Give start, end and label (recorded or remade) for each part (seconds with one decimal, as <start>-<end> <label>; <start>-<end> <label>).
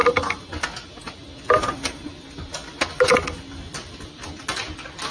0.0-5.1 recorded